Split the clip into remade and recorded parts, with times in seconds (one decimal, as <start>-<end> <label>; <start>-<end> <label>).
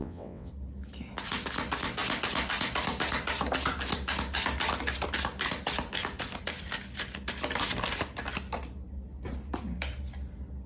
0.0-0.5 remade; 0.5-10.7 recorded